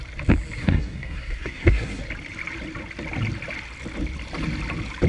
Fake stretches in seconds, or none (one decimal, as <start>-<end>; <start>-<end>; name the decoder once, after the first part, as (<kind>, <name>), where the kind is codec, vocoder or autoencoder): 0.6-2.0 (codec, SNAC)